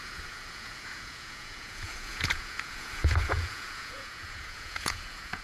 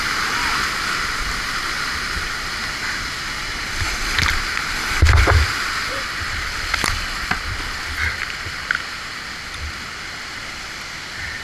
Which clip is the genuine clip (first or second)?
second